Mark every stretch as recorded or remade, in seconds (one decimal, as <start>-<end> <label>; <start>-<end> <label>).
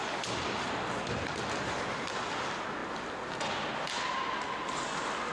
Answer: 0.0-5.3 recorded